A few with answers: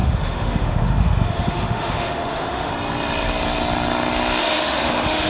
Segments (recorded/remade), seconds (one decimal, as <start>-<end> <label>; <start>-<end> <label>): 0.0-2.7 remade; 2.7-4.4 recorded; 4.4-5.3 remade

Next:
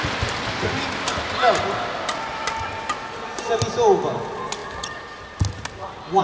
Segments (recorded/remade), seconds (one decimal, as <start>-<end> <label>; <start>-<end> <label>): 0.0-6.2 recorded

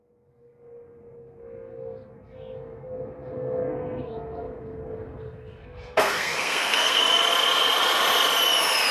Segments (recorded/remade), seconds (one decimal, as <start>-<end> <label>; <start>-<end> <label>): 0.0-7.0 remade; 7.0-8.9 recorded

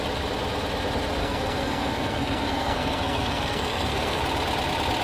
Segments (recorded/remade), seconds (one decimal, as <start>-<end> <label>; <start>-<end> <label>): 0.0-1.2 recorded; 1.2-4.2 remade; 4.2-5.0 recorded

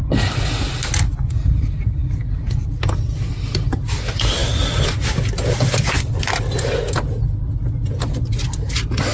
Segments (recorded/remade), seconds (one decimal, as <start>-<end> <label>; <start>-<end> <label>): 0.0-9.1 recorded

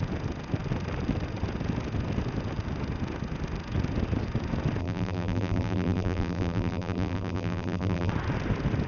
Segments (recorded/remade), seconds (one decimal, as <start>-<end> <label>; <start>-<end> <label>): 0.0-4.8 recorded; 4.8-8.1 remade; 8.1-8.9 recorded

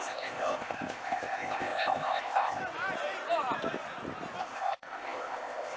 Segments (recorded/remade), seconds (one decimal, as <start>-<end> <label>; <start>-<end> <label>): 0.0-2.6 remade; 2.6-4.4 recorded; 4.4-5.8 remade

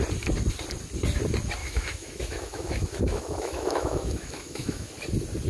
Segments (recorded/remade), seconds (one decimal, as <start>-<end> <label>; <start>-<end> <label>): 0.0-1.6 recorded; 1.6-4.9 remade; 4.9-5.5 recorded